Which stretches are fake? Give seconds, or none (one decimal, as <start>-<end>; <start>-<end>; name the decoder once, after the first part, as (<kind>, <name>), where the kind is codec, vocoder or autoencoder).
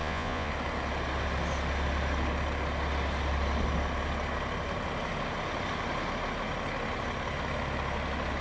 0.0-0.5 (vocoder, Vocos)